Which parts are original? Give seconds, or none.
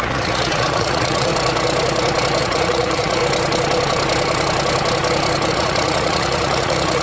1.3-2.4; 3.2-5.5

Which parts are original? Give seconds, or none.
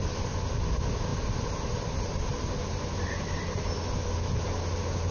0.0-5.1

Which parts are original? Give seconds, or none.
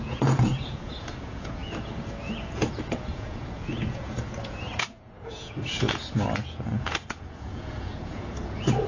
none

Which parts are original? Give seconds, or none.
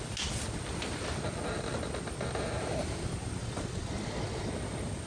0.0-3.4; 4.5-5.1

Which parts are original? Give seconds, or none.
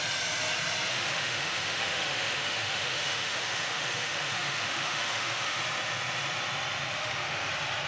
0.0-0.9; 5.6-7.0; 7.5-7.9